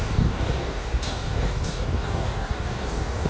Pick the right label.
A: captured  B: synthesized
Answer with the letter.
B